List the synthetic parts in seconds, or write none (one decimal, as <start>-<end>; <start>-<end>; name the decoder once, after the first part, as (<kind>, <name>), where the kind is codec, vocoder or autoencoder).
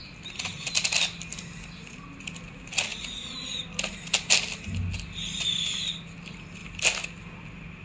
none